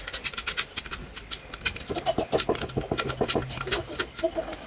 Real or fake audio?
real